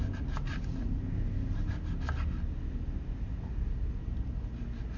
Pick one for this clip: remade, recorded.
recorded